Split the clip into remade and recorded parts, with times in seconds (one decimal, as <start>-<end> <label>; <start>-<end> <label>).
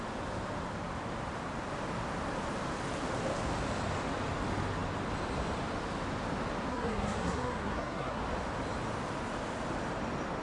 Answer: 0.0-6.7 recorded; 6.7-8.2 remade; 8.2-10.4 recorded